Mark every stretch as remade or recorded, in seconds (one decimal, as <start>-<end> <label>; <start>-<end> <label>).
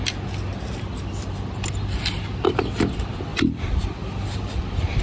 0.0-3.3 recorded; 3.3-5.0 remade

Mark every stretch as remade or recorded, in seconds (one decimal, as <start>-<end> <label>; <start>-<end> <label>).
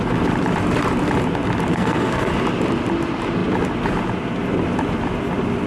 0.0-1.7 recorded; 1.7-2.3 remade; 2.3-5.7 recorded